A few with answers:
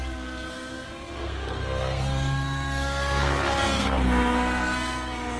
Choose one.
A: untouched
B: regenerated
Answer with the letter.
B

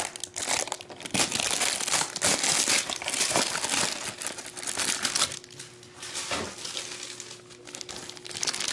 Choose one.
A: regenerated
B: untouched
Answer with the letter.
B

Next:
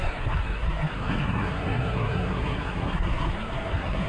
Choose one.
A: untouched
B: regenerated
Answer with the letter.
B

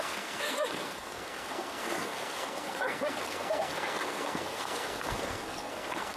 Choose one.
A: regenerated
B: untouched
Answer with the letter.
A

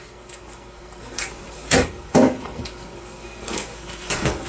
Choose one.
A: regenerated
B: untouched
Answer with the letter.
A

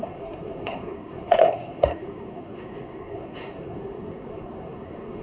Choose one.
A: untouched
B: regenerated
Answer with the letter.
B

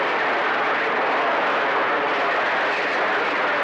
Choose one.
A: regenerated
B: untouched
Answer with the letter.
B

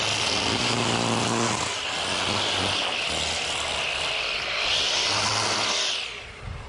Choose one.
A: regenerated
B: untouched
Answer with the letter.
B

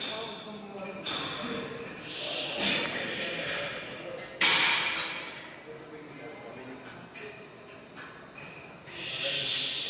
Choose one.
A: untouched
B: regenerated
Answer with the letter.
A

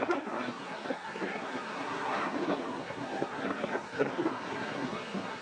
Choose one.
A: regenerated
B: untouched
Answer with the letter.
A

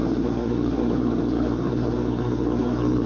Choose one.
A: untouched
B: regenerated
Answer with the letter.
B